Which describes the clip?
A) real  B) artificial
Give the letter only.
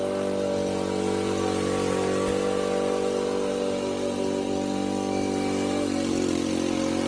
A